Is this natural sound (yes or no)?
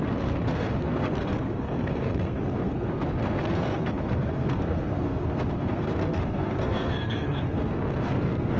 no